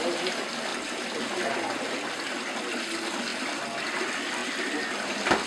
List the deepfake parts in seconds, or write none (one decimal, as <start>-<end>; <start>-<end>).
none

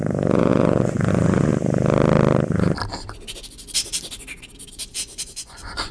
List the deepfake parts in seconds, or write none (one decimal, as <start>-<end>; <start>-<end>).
0.0-1.5; 4.7-5.9

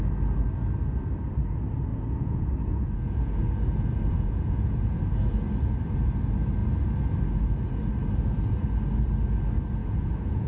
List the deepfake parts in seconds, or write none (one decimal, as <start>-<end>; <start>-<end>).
1.9-3.5; 4.1-5.0; 9.8-10.5

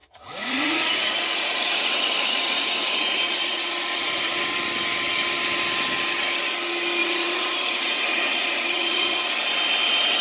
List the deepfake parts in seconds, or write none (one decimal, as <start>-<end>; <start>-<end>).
0.0-4.4; 7.0-9.3

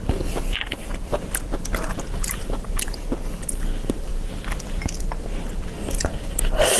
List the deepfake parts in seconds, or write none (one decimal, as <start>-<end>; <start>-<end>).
none

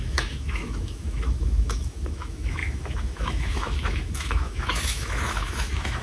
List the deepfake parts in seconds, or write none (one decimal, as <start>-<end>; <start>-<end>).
0.0-6.0